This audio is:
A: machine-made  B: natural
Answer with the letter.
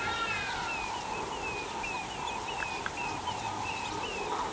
B